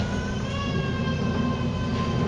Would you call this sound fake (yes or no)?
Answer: no